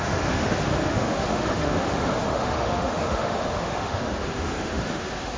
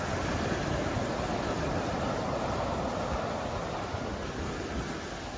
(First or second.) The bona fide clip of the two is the second